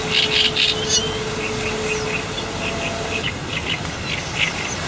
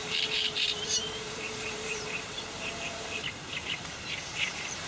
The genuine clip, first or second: first